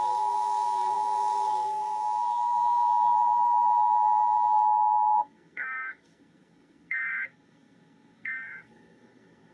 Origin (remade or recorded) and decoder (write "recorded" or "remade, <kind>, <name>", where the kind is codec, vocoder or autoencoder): remade, codec, SNAC